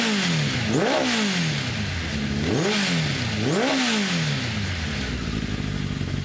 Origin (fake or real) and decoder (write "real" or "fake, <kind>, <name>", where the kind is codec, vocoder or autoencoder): real